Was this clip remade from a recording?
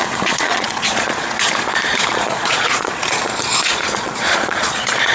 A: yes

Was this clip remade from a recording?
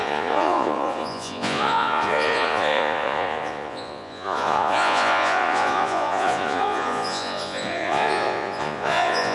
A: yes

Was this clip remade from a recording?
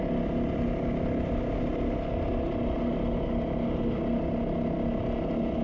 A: no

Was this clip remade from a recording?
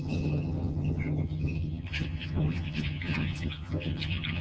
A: yes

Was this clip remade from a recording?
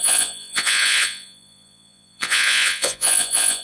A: yes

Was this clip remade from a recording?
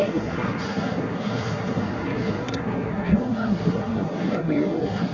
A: yes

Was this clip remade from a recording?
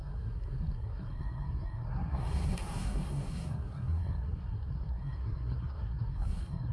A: yes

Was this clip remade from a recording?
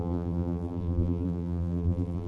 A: yes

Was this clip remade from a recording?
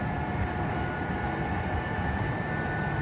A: no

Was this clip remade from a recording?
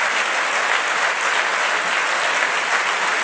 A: no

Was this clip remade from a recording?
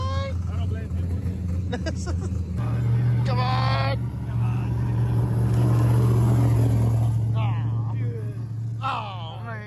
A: no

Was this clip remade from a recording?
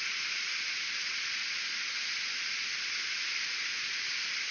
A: no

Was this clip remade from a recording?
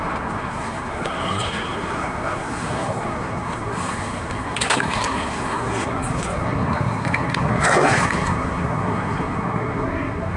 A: yes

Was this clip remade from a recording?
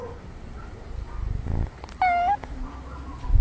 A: no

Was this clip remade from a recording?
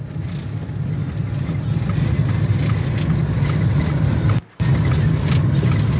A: no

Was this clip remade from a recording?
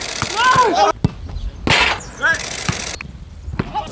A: no